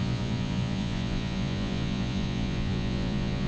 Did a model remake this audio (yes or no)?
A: yes